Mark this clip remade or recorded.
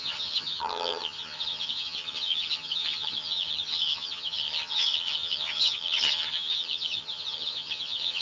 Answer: remade